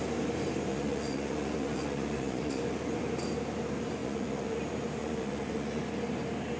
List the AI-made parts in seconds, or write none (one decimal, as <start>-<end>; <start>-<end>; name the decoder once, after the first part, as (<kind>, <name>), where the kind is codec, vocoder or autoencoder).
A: 0.7-2.6 (vocoder, Vocos); 4.0-4.6; 5.0-5.8

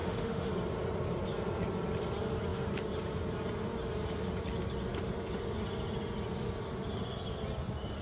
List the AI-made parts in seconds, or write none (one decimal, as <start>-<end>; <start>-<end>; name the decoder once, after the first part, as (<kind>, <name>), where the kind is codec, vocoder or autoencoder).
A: 0.0-0.5 (autoencoder, DAC-VAE)

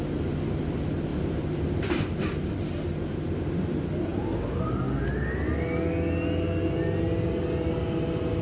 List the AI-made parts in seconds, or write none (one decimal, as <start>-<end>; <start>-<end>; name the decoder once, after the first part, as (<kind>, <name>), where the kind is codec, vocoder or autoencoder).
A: 1.1-2.6 (vocoder, BigVGAN v2); 4.1-4.8

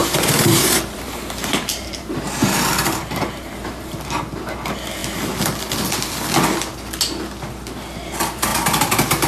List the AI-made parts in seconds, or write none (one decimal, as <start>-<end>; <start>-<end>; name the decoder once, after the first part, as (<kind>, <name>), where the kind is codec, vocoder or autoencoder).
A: 0.0-4.1 (vocoder, BigVGAN v2)

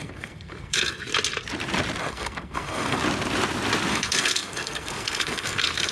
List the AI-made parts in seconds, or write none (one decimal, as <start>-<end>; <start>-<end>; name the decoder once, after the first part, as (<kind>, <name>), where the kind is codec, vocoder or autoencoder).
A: 0.0-1.1 (codec, SNAC); 2.0-3.0; 3.9-5.9

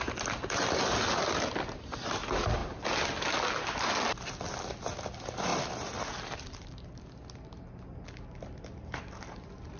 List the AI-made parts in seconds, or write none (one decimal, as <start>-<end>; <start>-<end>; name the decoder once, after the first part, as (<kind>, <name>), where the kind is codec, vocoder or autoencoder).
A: none

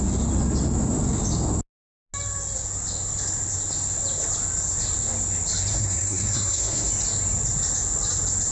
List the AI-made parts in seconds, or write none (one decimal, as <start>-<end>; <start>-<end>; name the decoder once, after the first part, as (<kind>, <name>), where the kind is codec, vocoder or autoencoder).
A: 5.7-6.9 (codec, SNAC)

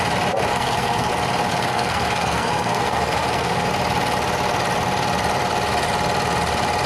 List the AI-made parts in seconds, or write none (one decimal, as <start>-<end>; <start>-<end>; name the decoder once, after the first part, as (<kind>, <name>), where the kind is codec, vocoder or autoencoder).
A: 0.5-1.1 (codec, SNAC); 1.5-3.7